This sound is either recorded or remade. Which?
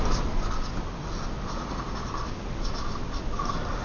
recorded